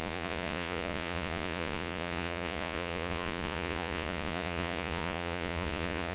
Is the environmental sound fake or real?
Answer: fake